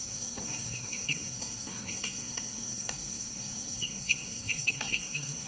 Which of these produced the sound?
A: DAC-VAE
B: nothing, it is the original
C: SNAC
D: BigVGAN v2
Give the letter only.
C